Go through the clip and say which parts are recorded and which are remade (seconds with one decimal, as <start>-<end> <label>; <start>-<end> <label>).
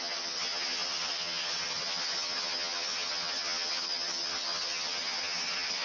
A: 0.0-5.8 remade